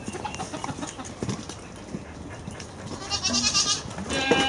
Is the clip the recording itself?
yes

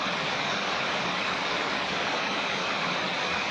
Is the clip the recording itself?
no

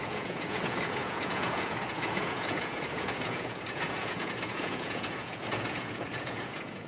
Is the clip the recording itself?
no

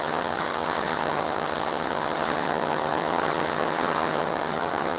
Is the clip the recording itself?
no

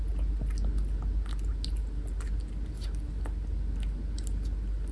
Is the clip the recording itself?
yes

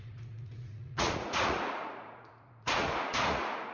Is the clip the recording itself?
no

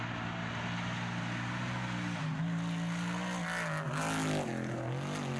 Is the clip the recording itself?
yes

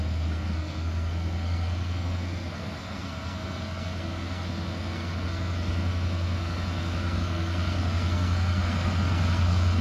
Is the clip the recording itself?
no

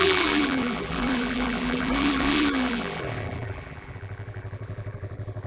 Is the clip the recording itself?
no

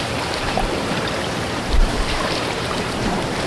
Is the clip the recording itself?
no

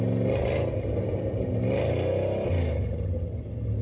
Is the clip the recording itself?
yes